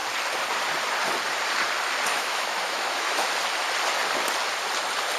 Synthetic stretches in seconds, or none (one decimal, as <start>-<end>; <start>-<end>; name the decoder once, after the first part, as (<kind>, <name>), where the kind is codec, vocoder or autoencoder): 2.1-3.3 (autoencoder, DAC-VAE)